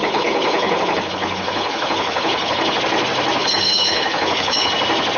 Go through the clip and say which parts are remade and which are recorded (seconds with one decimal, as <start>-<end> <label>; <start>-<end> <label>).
0.0-2.8 remade; 2.8-3.4 recorded; 3.4-4.7 remade; 4.7-5.2 recorded